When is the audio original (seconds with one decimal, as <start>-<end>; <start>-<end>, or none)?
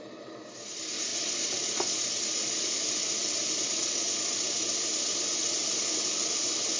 0.0-6.8